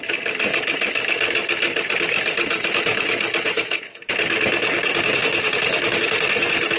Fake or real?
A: real